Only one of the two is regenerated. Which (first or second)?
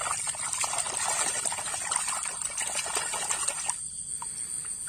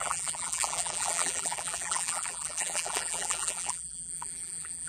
second